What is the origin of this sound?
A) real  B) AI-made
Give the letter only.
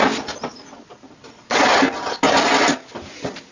A